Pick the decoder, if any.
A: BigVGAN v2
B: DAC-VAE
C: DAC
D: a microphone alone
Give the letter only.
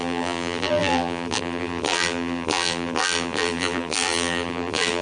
A